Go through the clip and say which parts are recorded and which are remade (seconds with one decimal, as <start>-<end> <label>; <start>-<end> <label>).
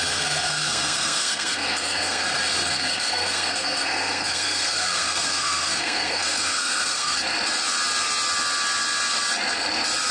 0.0-2.2 remade; 2.2-2.7 recorded; 2.7-7.2 remade; 7.2-10.1 recorded